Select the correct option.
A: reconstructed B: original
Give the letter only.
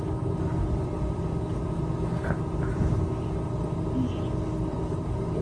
B